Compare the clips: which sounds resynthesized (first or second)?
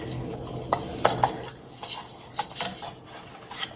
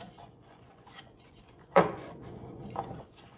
second